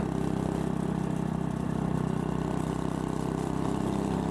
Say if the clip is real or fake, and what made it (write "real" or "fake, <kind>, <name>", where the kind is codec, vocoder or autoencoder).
real